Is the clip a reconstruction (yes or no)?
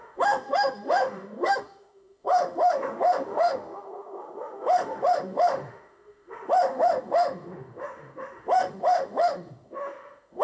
yes